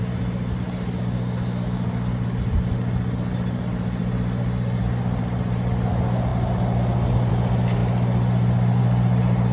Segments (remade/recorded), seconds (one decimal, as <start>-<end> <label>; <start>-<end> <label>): 0.0-9.5 recorded